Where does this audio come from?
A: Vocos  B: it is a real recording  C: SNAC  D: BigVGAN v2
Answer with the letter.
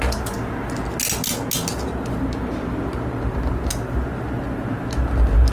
B